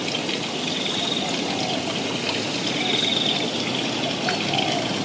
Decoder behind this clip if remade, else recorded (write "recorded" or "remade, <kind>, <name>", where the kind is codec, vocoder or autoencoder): recorded